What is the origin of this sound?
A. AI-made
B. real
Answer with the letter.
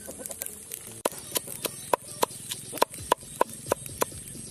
A